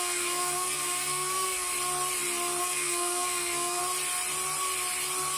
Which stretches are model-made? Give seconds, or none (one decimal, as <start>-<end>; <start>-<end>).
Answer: 0.0-1.7; 2.6-3.8